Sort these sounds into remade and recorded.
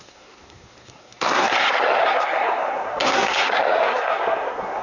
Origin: remade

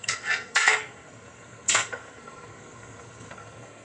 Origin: remade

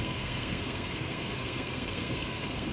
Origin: remade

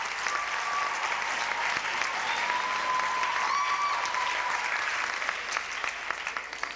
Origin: recorded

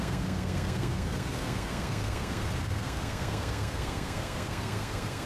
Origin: remade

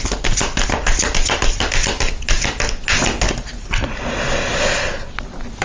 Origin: recorded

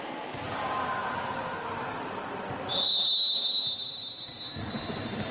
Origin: recorded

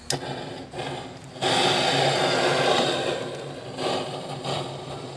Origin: recorded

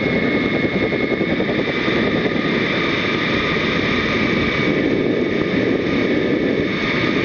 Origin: recorded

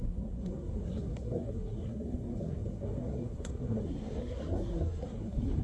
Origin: remade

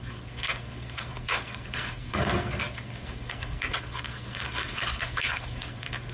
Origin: remade